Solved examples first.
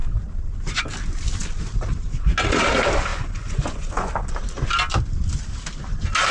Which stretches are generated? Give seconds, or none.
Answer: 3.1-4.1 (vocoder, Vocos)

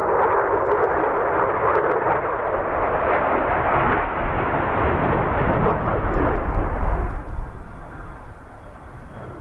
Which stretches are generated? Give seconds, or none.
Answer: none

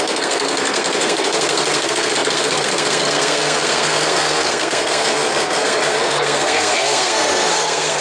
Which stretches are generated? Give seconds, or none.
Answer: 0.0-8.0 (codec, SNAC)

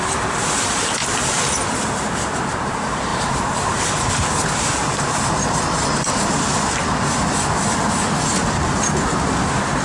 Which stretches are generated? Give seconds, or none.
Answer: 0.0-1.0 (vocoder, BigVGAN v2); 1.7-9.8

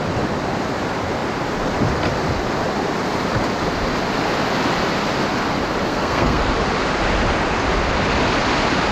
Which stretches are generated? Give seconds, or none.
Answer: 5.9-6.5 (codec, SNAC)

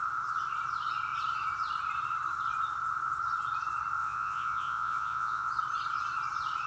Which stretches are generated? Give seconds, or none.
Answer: 4.0-5.5 (vocoder, Vocos)

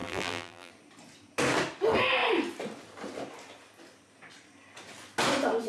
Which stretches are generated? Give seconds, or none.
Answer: 0.0-0.7 (vocoder, BigVGAN v2)